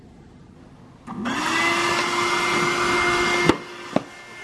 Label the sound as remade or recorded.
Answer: recorded